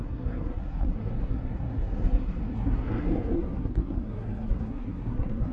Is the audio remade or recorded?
remade